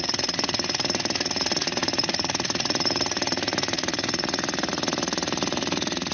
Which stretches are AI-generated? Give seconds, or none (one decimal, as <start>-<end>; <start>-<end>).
0.0-6.1